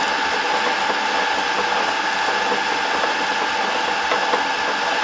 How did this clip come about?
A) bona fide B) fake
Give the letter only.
A